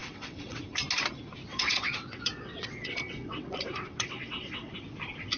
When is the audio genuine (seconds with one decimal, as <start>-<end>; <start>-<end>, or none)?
0.6-1.5; 4.7-5.4